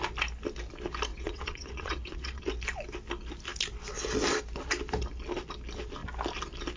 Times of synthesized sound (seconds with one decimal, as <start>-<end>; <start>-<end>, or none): 1.1-2.4